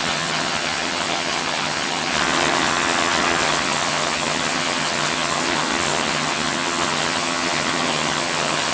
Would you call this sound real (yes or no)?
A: no